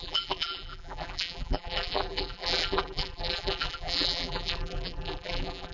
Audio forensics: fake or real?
fake